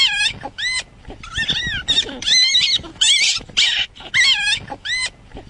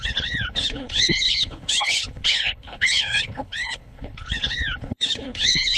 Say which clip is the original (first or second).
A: first